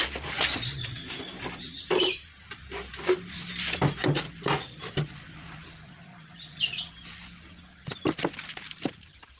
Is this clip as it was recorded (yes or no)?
yes